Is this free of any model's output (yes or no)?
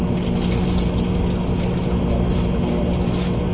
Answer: yes